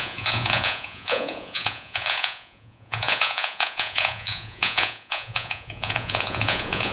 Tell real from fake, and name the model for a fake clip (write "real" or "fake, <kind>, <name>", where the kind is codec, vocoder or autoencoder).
fake, vocoder, Vocos